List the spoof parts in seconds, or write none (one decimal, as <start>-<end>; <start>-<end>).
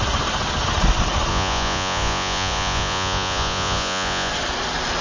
1.3-4.3